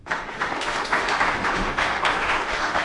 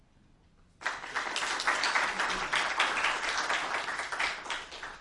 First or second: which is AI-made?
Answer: first